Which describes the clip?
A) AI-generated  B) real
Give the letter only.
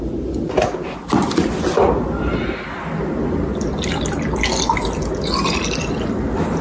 B